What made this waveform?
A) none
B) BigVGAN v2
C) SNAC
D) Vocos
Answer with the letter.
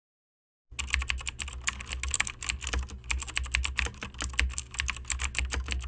A